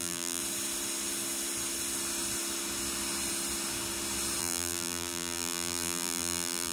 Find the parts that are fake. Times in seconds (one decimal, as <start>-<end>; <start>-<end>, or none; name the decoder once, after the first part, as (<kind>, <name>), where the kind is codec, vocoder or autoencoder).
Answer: 0.0-0.4 (vocoder, BigVGAN v2); 4.4-6.7